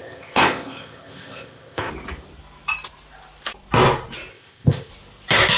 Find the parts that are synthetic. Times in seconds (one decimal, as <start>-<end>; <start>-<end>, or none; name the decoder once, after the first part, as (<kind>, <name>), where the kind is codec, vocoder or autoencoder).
0.0-1.9 (codec, ZipCodec); 4.3-4.9